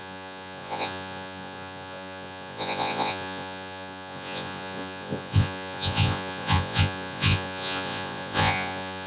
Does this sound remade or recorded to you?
remade